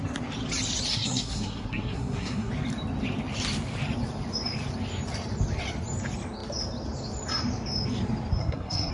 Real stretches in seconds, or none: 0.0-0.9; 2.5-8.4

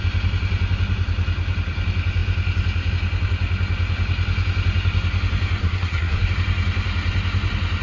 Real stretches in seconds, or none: 0.0-5.6; 6.3-7.8

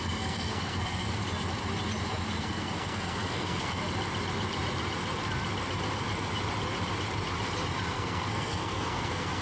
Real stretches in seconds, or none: 1.2-2.4; 3.8-7.9

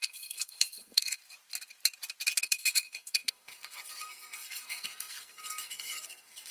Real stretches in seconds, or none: 1.2-2.4

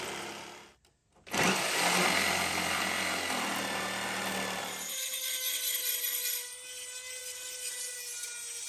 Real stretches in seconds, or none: 0.0-8.7